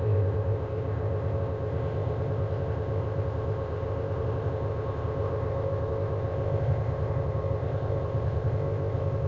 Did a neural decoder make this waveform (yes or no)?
yes